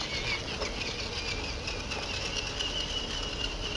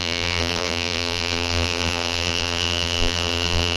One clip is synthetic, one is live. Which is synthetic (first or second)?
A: second